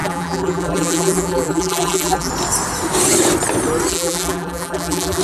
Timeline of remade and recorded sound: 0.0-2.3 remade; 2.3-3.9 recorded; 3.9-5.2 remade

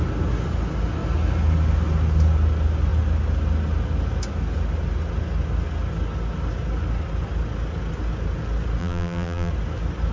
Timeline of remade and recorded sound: 0.0-8.8 recorded; 8.8-9.5 remade; 9.5-10.1 recorded